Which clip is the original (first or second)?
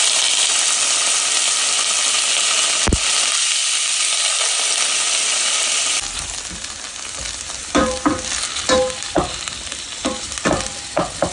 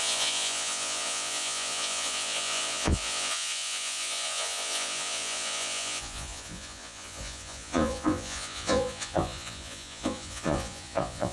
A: first